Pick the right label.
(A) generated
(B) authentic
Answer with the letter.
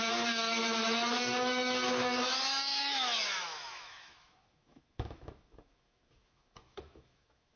A